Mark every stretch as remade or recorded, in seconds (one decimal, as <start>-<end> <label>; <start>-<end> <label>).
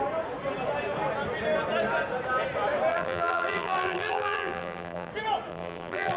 0.0-2.9 recorded; 2.9-5.1 remade; 5.1-5.5 recorded; 5.5-6.2 remade